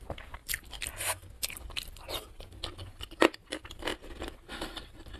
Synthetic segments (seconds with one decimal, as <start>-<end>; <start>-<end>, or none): 0.0-0.4; 3.5-3.9